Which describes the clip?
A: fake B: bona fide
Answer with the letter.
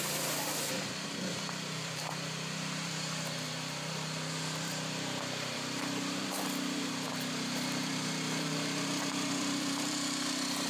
A